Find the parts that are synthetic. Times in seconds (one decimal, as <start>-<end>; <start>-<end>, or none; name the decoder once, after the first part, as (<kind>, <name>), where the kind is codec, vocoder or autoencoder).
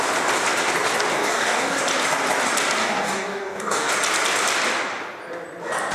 1.1-1.8 (codec, DAC); 2.8-3.9